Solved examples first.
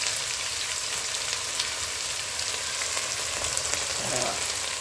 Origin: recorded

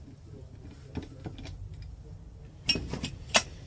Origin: recorded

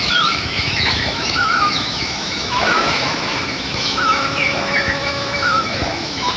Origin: remade